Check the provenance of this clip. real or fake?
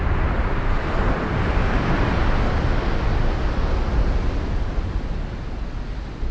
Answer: real